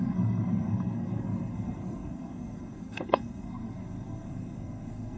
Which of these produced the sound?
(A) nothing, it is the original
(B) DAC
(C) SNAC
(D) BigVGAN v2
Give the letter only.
C